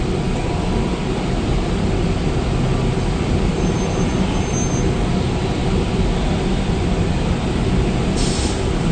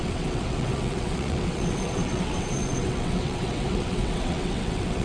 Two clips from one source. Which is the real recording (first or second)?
first